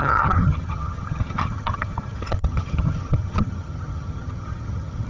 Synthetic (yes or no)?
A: yes